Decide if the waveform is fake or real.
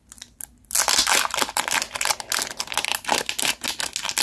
real